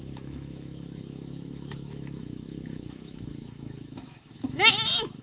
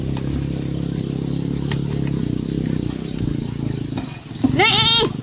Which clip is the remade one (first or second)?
first